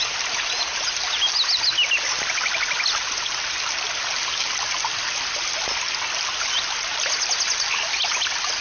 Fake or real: real